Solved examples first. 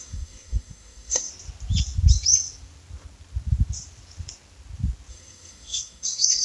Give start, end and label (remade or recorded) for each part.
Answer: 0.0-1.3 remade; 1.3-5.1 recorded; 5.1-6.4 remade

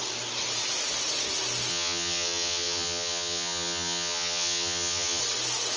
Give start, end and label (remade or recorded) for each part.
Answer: 0.0-1.7 recorded; 1.7-5.2 remade; 5.2-5.8 recorded

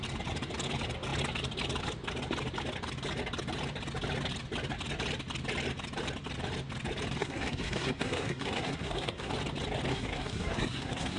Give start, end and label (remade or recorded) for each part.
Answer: 0.0-7.2 recorded; 7.2-9.3 remade; 9.3-9.9 recorded; 9.9-11.2 remade

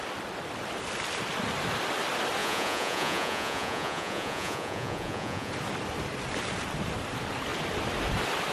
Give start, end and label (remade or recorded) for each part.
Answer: 0.0-2.4 recorded; 2.4-5.5 remade; 5.5-8.5 recorded

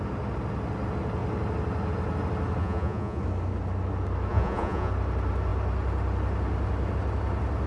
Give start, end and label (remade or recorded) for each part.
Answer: 0.0-2.6 recorded; 2.6-3.2 remade; 3.2-4.3 recorded; 4.3-4.9 remade; 4.9-7.7 recorded

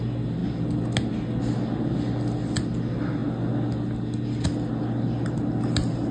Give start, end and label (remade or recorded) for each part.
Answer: 0.0-6.1 recorded